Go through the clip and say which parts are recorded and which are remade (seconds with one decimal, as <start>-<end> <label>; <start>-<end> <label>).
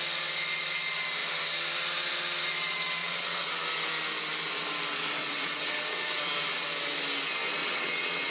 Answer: 0.0-3.0 recorded; 3.0-3.5 remade; 3.5-5.2 recorded; 5.2-6.2 remade; 6.2-7.6 recorded; 7.6-8.3 remade